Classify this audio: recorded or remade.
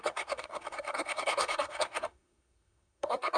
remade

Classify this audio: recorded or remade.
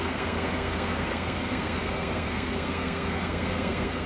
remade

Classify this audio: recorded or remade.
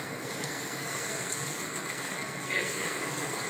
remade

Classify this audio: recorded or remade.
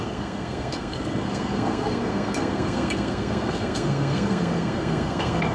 remade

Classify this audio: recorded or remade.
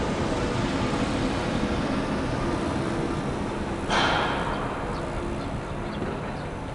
recorded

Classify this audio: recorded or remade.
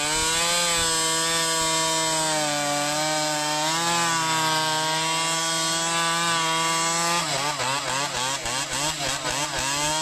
recorded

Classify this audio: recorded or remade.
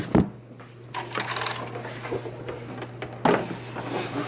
recorded